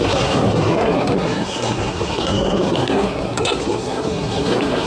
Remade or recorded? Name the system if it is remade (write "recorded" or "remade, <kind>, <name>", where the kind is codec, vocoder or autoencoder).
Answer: remade, codec, SNAC